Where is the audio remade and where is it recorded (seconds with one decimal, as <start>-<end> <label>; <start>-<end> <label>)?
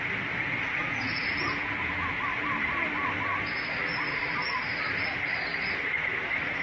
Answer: 0.0-0.8 recorded; 0.8-2.2 remade; 2.2-6.6 recorded